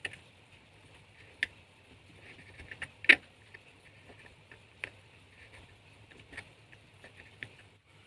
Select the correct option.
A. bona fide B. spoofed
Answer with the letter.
A